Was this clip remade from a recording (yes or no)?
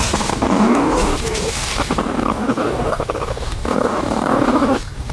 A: yes